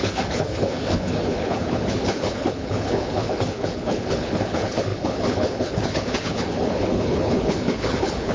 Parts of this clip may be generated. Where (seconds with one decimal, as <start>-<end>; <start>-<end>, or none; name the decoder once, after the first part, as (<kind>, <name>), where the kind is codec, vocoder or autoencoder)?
0.0-8.3 (codec, HILCodec)